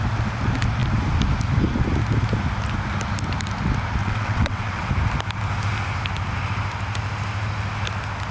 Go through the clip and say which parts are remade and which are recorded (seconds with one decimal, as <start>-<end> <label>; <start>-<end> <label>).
0.0-4.0 recorded; 4.0-4.9 remade; 4.9-8.3 recorded

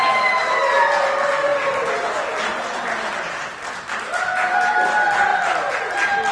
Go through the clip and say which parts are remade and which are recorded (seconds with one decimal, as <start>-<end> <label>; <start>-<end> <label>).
0.0-6.3 recorded